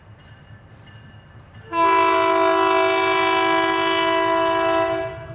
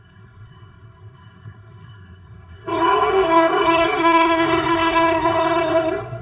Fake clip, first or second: second